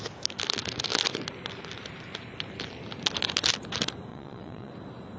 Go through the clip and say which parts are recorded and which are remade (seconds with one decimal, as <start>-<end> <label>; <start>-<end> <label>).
0.0-4.1 recorded; 4.1-4.7 remade; 4.7-5.2 recorded